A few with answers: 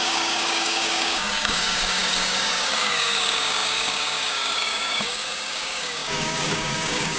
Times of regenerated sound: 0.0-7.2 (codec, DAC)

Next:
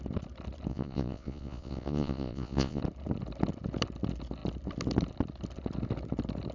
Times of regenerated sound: 0.7-2.8 (vocoder, Vocos)

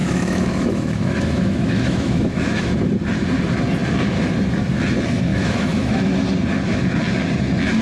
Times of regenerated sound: 0.0-2.7 (autoencoder, DAC-VAE); 5.3-6.2

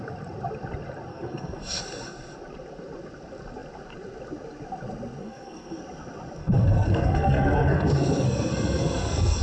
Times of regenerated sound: 1.1-1.8 (codec, SNAC); 5.2-5.8; 6.4-9.4

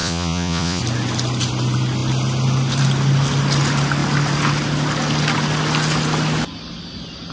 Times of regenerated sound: 0.0-0.8 (vocoder, Vocos)

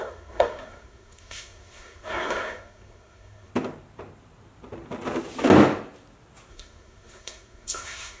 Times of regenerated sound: 0.0-3.5 (codec, SNAC); 6.5-8.2